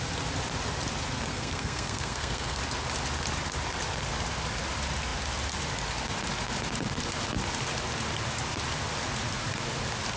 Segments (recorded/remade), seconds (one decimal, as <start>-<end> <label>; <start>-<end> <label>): 0.0-1.3 recorded; 1.3-2.6 remade; 2.6-10.2 recorded